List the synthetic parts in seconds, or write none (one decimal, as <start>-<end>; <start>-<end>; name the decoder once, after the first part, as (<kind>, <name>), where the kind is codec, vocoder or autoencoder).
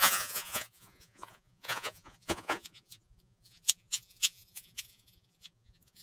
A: 0.0-6.0 (vocoder, Vocos)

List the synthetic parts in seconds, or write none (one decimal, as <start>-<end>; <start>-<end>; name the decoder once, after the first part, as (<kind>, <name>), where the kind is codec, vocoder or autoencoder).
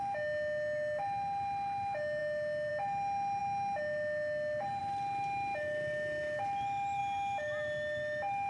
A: none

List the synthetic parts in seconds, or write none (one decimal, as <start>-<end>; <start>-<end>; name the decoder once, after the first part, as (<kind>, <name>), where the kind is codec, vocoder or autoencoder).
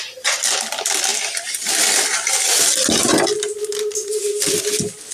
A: none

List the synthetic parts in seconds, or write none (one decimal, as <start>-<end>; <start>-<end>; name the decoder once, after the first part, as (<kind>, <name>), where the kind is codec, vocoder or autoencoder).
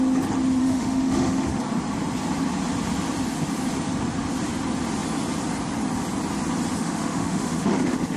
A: 0.6-1.6 (autoencoder, DAC-VAE); 6.7-8.2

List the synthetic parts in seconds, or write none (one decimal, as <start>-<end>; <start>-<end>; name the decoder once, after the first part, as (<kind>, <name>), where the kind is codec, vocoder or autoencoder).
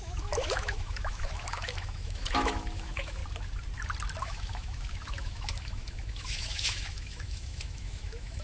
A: 0.0-3.2 (autoencoder, DAC-VAE); 4.2-8.4